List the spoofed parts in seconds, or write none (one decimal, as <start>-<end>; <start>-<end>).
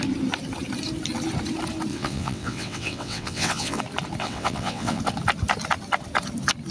1.9-3.8; 4.2-5.0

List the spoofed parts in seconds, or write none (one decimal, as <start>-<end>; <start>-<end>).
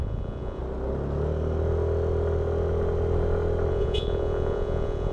0.0-0.6; 3.7-5.1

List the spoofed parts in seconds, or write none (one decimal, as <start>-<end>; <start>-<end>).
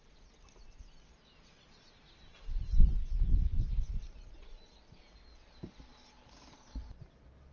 none